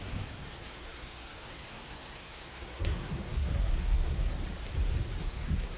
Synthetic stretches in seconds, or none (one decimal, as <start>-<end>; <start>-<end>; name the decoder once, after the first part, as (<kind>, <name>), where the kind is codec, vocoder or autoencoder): 0.0-4.3 (codec, SNAC); 5.2-5.8